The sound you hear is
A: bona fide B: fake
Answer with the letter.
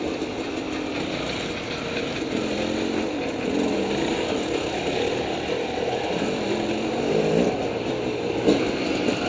A